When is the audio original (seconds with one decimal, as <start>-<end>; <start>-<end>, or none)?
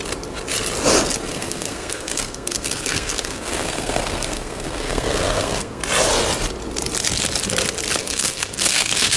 0.0-1.3; 5.8-8.0